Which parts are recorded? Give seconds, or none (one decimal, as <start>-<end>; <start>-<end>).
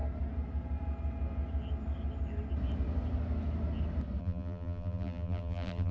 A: 0.0-4.2